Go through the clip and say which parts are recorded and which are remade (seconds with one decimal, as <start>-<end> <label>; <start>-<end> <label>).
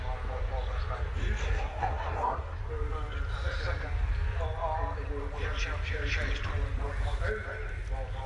0.0-1.4 recorded; 1.4-2.6 remade; 2.6-8.3 recorded